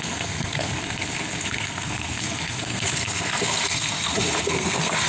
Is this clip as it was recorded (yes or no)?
no